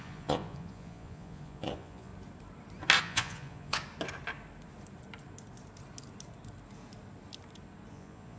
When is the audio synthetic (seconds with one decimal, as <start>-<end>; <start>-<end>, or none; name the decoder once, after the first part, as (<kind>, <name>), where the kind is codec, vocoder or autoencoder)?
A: 0.0-2.1 (vocoder, Vocos); 3.0-3.8; 7.9-8.4